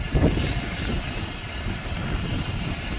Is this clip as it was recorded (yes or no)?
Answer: yes